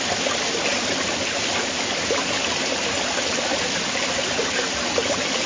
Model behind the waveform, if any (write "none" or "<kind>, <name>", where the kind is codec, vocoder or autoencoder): none